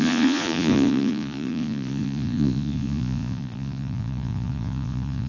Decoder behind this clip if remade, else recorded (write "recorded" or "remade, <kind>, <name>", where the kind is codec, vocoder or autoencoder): remade, vocoder, Vocos